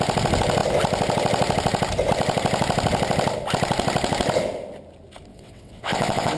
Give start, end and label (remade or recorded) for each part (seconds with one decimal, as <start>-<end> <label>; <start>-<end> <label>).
0.0-5.3 recorded; 5.3-6.4 remade